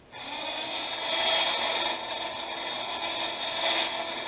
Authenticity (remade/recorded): recorded